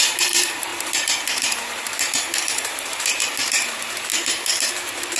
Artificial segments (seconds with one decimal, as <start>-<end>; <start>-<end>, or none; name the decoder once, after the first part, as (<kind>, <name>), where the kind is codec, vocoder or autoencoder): 0.0-5.2 (vocoder, BigVGAN v2)